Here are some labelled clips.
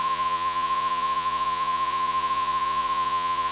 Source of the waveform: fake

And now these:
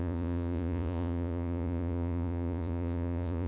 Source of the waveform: fake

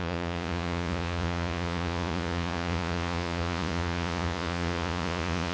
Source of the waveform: fake